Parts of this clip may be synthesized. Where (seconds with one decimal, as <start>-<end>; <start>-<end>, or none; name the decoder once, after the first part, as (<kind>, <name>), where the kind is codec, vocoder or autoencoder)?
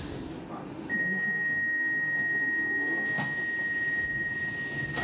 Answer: 1.0-3.4 (codec, SNAC)